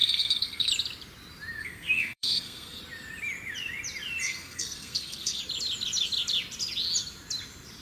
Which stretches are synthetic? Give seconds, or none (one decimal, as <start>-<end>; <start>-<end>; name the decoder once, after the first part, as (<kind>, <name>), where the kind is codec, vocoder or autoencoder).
0.0-0.7 (codec, SNAC); 1.6-2.8; 4.2-5.4